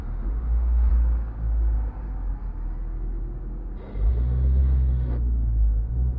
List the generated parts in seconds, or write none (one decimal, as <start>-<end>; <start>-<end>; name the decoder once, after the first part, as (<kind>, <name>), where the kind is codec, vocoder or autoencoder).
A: 0.0-0.9 (autoencoder, DAC-VAE); 4.1-6.2